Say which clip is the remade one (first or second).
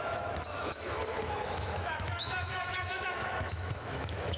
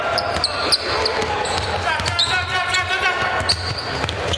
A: first